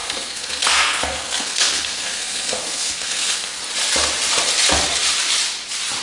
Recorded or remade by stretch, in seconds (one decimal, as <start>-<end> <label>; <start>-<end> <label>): 0.0-3.6 remade; 3.6-6.0 recorded